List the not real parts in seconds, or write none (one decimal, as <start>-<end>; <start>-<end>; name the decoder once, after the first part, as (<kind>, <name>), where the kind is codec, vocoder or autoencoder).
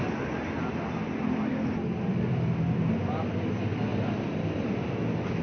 none